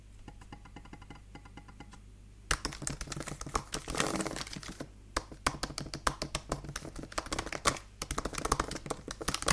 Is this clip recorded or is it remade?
recorded